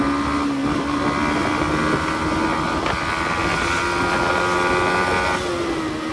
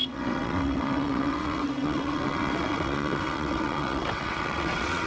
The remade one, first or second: second